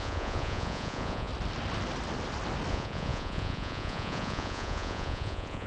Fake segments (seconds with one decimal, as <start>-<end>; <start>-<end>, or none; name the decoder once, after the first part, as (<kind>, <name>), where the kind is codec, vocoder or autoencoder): 0.0-1.3 (vocoder, Vocos); 2.7-5.7